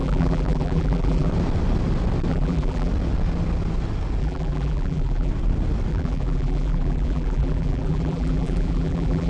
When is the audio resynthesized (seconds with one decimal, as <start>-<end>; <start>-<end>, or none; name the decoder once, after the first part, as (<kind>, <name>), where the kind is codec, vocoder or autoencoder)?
0.0-1.3 (vocoder, BigVGAN v2); 2.3-2.9; 4.2-5.3; 5.9-9.3